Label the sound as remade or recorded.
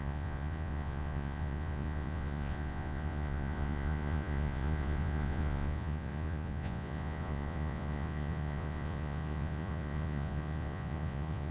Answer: remade